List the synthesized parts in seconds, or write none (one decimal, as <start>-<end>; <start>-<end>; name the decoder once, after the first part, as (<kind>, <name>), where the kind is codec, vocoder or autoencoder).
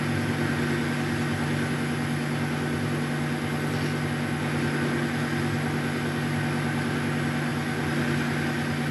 none